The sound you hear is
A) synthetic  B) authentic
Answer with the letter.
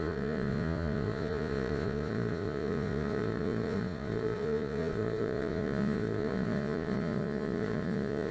A